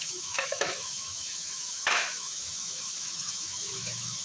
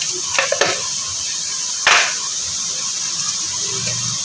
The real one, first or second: second